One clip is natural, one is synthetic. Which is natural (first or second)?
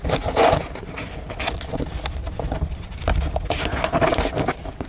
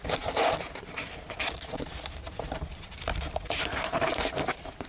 first